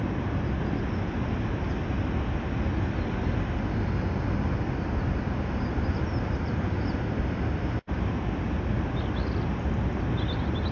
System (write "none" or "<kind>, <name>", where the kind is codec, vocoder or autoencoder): none